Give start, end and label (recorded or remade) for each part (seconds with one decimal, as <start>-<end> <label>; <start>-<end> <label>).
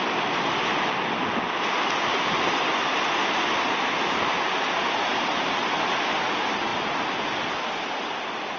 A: 0.0-8.6 recorded